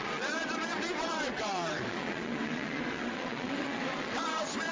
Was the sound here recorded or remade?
remade